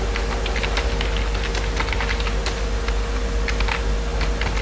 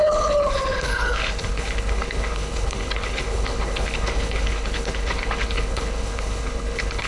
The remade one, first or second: second